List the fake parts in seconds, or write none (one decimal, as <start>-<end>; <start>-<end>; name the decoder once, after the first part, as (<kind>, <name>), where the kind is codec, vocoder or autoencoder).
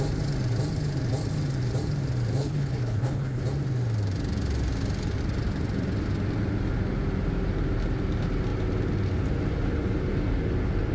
2.4-3.4 (codec, HILCodec)